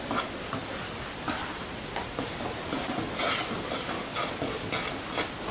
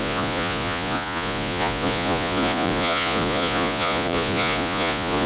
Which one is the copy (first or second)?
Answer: second